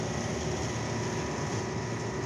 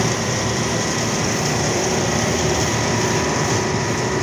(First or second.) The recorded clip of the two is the first